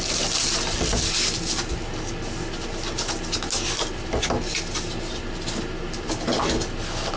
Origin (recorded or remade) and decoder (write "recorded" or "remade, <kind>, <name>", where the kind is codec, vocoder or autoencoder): recorded